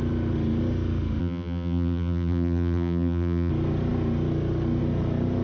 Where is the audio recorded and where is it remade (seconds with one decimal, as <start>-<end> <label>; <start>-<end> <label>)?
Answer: 0.0-1.2 recorded; 1.2-3.5 remade; 3.5-5.4 recorded